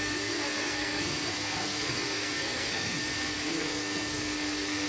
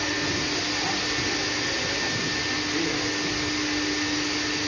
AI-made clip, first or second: first